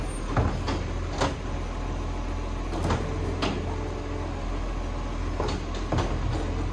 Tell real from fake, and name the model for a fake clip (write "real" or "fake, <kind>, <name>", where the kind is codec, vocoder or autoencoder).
real